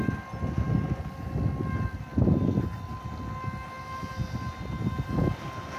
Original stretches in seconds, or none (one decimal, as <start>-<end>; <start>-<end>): 0.0-5.8